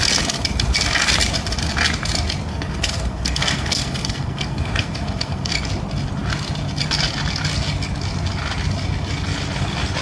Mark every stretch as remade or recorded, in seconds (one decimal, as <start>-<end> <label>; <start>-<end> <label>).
0.0-2.5 recorded; 2.5-5.5 remade; 5.5-10.0 recorded